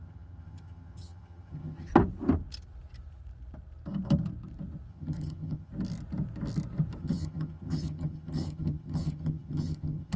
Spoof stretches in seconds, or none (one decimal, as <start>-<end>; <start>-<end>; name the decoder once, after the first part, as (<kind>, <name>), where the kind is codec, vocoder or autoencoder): 0.0-1.9 (vocoder, HiFi-GAN); 4.9-5.7; 7.0-10.2